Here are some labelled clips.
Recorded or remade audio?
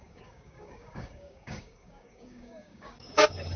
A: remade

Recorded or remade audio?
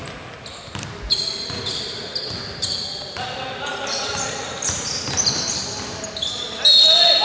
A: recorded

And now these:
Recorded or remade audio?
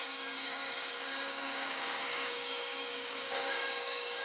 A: remade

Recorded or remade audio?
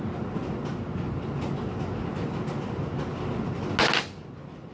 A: recorded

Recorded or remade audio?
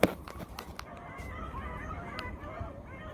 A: recorded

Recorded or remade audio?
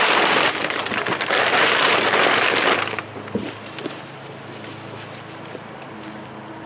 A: recorded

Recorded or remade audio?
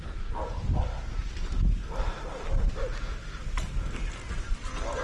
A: recorded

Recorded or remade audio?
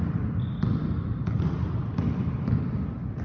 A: recorded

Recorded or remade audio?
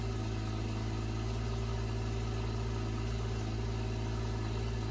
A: recorded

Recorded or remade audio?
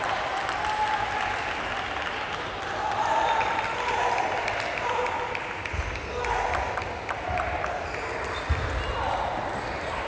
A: recorded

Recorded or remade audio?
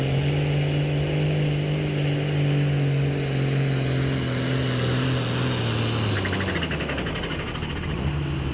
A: recorded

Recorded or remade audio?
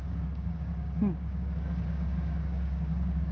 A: remade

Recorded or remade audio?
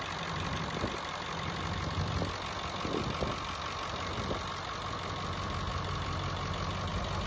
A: recorded